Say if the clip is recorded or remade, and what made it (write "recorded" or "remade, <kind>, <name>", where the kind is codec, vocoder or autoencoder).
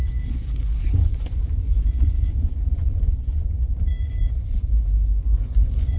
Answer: remade, vocoder, Vocos